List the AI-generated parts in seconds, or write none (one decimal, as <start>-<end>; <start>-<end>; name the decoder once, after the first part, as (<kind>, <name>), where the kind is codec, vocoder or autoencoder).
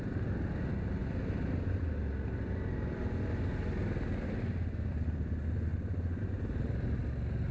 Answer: 1.0-1.8 (vocoder, BigVGAN v2); 5.7-6.2